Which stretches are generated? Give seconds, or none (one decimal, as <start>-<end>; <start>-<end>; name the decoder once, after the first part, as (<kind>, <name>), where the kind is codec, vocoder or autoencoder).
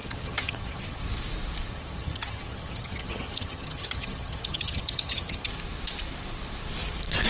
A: 0.0-1.0 (vocoder, HiFi-GAN); 1.7-5.5